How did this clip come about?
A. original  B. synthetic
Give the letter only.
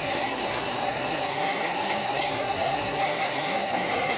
B